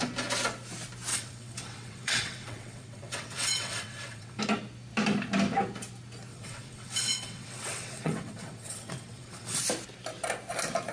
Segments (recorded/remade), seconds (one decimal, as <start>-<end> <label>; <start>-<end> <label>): 0.0-1.1 recorded; 1.1-4.4 remade; 4.4-6.3 recorded; 6.3-9.6 remade; 9.6-10.9 recorded